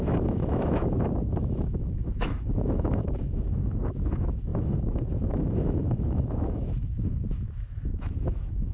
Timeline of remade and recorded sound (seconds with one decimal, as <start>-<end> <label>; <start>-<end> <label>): 0.0-8.7 remade